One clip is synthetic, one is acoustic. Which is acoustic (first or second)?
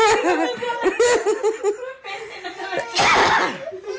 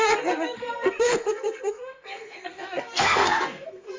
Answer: first